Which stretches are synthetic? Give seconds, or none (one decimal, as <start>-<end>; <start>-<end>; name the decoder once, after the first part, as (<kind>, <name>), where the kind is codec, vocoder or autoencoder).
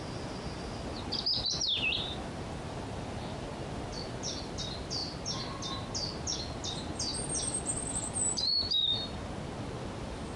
none